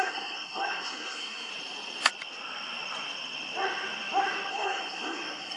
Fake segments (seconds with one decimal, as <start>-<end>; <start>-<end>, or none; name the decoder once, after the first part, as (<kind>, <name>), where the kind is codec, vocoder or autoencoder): 0.0-1.5 (codec, SNAC); 4.5-5.6